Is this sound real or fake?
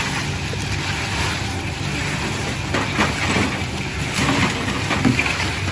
real